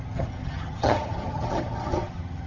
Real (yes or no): no